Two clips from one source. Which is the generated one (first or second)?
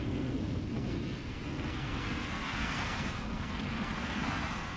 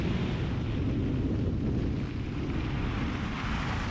first